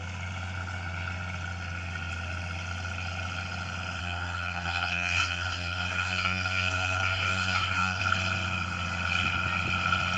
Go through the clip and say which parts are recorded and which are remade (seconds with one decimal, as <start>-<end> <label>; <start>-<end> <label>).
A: 0.0-4.0 recorded; 4.0-8.0 remade; 8.0-10.2 recorded